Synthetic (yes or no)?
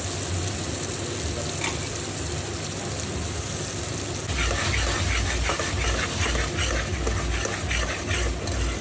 no